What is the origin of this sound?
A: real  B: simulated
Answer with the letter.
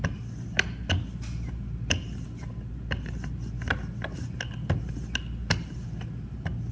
A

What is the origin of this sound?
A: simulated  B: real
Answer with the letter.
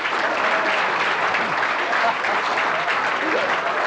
B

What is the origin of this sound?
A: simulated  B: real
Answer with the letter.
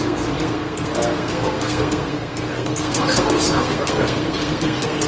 A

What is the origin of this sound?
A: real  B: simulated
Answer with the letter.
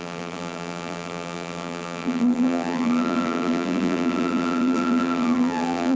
B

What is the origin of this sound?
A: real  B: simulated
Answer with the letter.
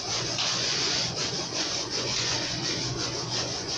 B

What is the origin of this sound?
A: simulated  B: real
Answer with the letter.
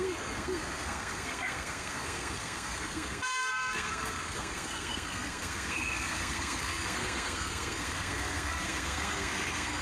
A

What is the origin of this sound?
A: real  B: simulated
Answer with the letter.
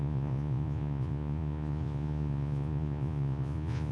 B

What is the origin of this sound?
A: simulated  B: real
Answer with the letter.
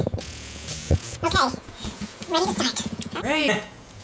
A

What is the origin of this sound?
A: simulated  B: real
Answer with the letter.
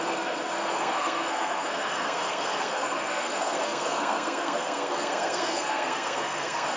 A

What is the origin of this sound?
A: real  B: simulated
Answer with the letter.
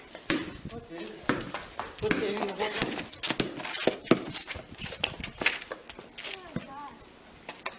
A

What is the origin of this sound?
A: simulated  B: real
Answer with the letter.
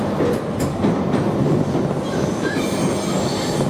B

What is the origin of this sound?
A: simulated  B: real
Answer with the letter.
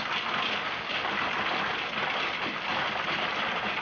B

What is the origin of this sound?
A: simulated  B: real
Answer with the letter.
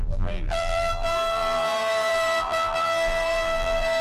A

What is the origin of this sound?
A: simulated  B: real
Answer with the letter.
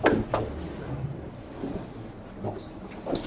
B